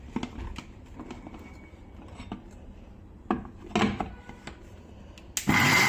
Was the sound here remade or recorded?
recorded